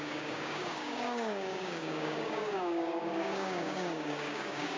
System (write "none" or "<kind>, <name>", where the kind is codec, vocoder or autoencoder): codec, DAC